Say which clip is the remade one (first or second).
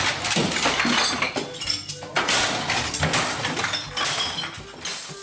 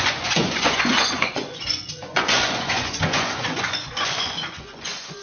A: second